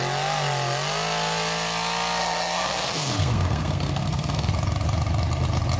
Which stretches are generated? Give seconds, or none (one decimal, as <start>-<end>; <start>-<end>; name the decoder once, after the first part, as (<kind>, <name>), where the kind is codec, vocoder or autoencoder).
2.2-4.5 (codec, SNAC)